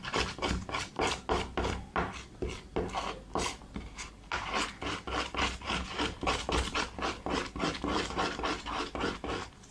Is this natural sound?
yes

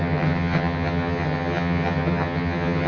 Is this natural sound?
no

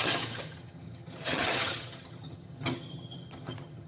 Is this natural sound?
no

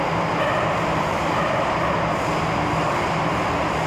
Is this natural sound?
yes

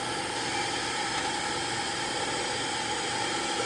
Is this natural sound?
yes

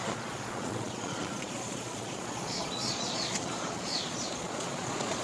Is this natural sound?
no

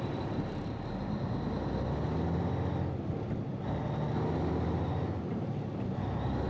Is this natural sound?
yes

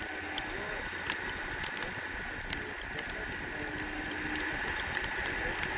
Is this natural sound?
yes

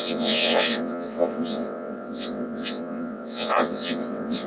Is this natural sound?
no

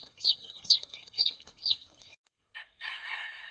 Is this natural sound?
no